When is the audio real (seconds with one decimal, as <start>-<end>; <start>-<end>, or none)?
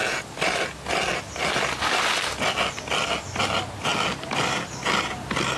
0.0-3.9; 5.1-5.6